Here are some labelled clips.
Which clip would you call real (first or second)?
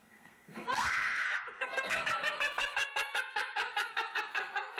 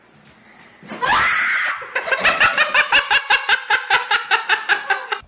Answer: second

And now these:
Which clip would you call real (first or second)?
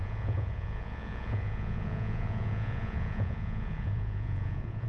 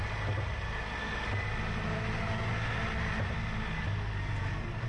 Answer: second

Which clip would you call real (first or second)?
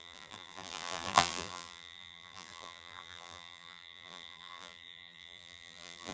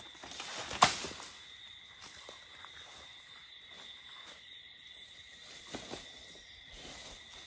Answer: second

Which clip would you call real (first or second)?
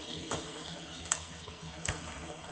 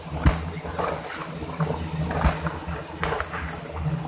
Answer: second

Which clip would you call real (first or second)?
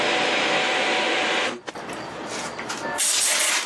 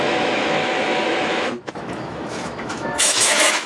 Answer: first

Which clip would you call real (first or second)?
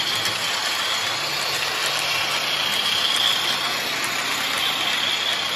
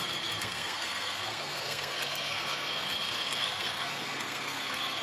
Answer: first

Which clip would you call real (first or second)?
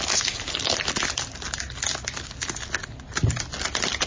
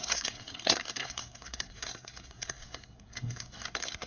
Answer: first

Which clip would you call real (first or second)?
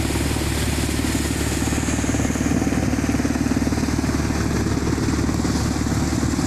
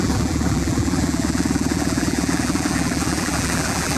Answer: first